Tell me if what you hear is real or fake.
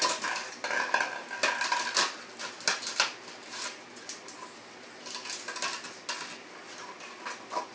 real